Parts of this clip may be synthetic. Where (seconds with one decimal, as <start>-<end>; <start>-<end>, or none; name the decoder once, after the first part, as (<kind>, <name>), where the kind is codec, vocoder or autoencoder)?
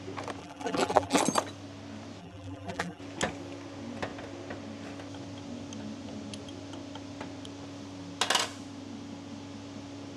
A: 0.4-1.2 (vocoder, BigVGAN v2); 2.2-3.0